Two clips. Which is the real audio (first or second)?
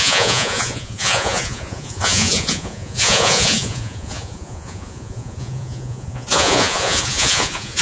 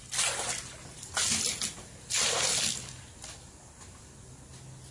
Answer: second